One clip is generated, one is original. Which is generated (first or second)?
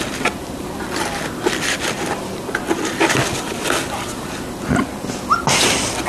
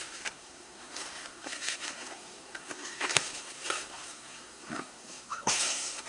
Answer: second